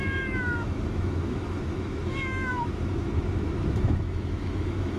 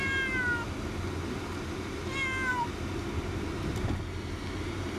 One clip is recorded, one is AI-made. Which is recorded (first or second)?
second